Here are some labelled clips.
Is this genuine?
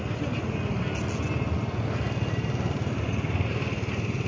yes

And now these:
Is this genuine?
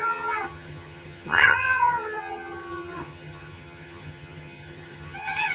no